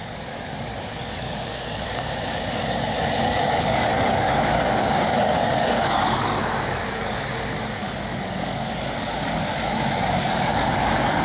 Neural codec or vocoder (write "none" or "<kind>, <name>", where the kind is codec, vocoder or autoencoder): codec, DAC